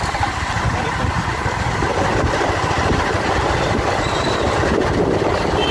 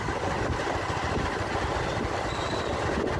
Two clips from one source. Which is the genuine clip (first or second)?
second